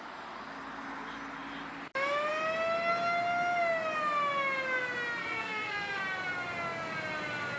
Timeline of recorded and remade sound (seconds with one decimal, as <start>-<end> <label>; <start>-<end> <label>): 0.0-5.2 recorded; 5.2-6.0 remade; 6.0-7.6 recorded